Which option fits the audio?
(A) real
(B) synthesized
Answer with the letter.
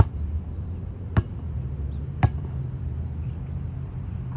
A